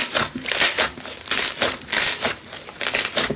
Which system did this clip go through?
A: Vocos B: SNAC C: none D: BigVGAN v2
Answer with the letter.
C